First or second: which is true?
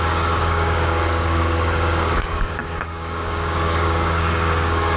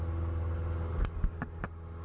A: second